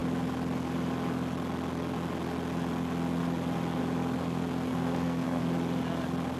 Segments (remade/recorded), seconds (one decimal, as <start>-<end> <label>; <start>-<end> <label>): 0.0-4.2 recorded; 4.2-5.4 remade; 5.4-6.4 recorded